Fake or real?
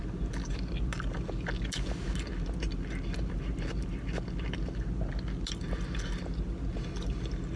real